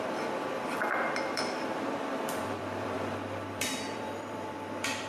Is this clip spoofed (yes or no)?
yes